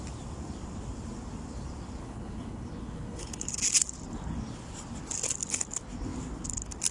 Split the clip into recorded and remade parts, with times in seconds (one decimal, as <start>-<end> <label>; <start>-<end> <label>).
0.0-2.0 recorded; 2.0-3.6 remade; 3.6-6.9 recorded

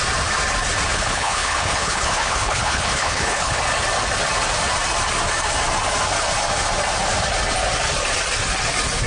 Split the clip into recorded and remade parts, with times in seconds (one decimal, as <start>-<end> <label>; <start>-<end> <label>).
0.0-0.9 recorded; 0.9-3.6 remade; 3.6-9.1 recorded